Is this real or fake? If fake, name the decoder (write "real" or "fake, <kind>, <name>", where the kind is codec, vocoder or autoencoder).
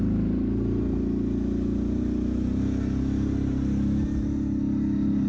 real